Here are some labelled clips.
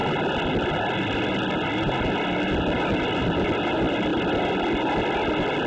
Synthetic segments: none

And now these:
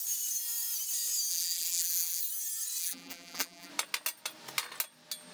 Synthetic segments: 1.3-2.2 (vocoder, BigVGAN v2); 2.8-3.7

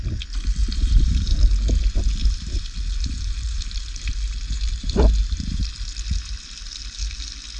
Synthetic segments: 0.6-1.4 (vocoder, BigVGAN v2); 2.2-5.6

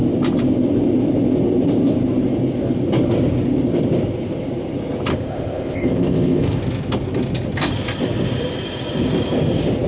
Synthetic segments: 5.1-6.6 (codec, ZipCodec)

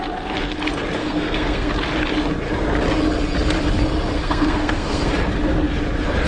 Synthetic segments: 1.0-1.7 (codec, SNAC); 4.1-5.1

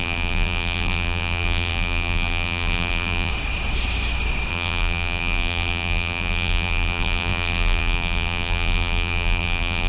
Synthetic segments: 0.0-3.3 (vocoder, BigVGAN v2); 4.5-9.9